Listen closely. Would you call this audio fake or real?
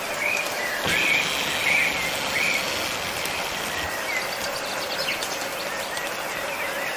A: real